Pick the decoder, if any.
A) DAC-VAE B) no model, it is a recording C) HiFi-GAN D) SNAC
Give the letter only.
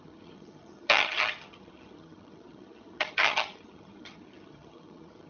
C